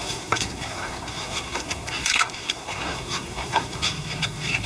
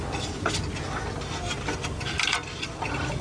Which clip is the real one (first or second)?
second